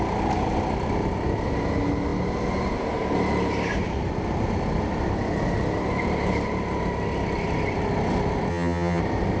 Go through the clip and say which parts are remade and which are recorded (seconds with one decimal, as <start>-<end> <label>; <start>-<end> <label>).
0.0-8.5 recorded; 8.5-9.0 remade; 9.0-9.4 recorded